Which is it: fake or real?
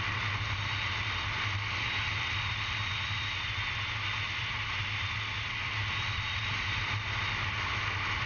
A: real